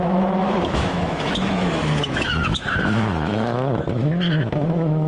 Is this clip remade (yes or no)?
yes